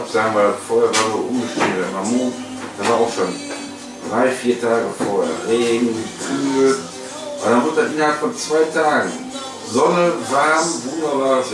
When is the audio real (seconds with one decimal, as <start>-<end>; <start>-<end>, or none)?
0.0-6.0; 6.9-11.5